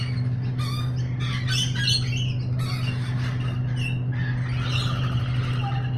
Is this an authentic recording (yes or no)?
yes